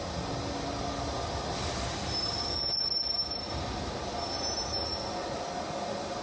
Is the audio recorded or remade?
recorded